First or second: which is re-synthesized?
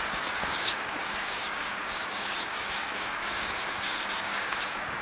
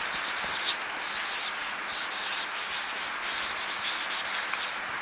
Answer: first